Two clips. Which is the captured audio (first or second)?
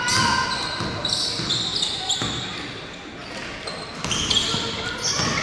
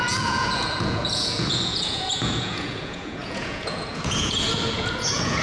first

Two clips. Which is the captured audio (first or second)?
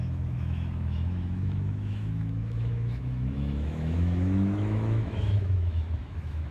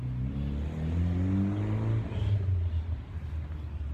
second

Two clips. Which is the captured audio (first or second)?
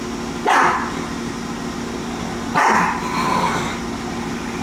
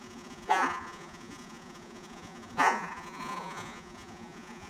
first